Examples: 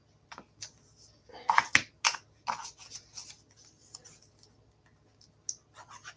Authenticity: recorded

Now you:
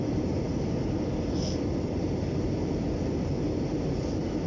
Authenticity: recorded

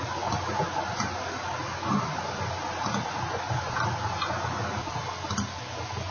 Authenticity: recorded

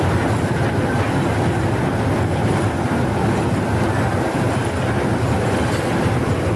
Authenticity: recorded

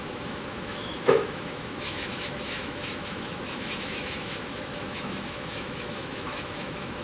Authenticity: remade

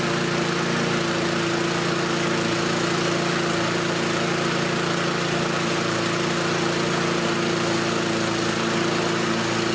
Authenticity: recorded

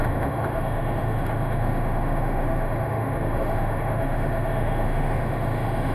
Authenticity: remade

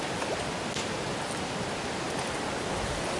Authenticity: recorded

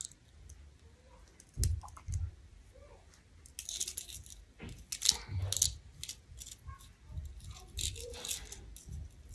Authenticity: recorded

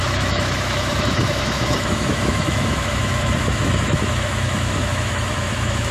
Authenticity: remade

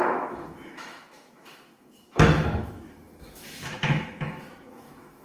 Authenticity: remade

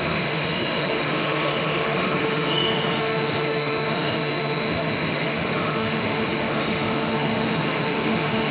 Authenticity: remade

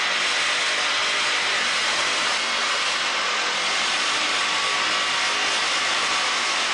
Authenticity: recorded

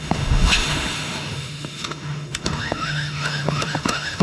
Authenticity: remade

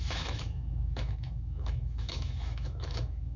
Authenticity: remade